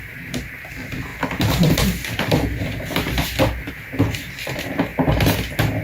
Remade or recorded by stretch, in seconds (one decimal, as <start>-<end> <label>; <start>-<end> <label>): 0.0-5.8 recorded